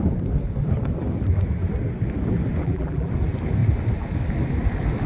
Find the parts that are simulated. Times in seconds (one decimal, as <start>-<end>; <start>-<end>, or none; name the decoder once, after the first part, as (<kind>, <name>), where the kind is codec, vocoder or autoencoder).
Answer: 2.6-3.1 (vocoder, BigVGAN v2)